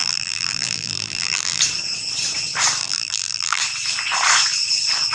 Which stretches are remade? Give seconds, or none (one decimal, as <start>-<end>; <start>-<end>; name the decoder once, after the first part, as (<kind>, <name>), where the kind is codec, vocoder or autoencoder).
0.0-1.6 (vocoder, BigVGAN v2); 2.8-3.6